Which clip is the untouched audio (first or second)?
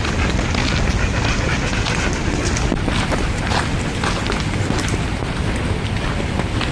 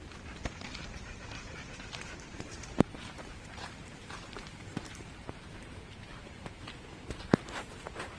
first